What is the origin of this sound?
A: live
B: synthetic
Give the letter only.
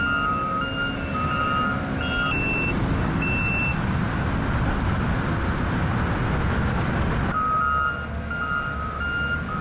A